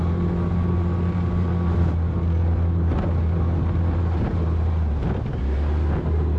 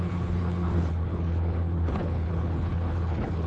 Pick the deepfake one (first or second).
second